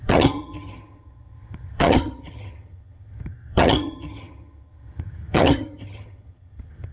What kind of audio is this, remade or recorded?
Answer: remade